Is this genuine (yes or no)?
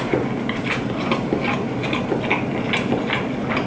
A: yes